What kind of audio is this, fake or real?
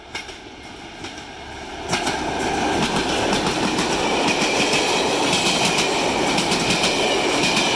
real